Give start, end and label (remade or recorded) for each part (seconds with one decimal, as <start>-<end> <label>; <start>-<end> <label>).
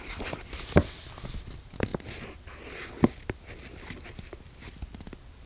0.0-5.5 recorded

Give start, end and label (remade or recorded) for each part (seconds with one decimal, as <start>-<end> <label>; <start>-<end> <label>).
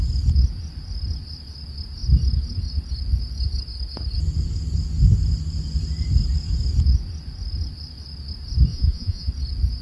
0.0-8.7 recorded; 8.7-9.3 remade; 9.3-9.8 recorded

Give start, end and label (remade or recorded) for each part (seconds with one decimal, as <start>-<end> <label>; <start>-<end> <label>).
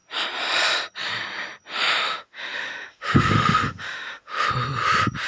0.0-1.9 recorded; 1.9-4.5 remade; 4.5-5.3 recorded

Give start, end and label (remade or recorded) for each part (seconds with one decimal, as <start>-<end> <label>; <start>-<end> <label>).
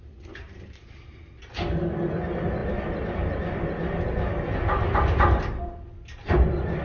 0.0-6.8 recorded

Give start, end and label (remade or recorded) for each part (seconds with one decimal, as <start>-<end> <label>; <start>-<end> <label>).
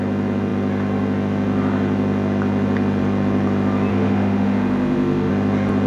0.0-3.9 recorded; 3.9-5.3 remade; 5.3-5.9 recorded